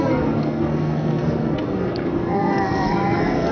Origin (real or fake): fake